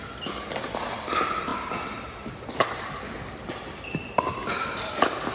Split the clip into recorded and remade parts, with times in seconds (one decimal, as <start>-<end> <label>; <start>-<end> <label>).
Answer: 0.0-5.3 recorded